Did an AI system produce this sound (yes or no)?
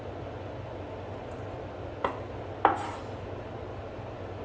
no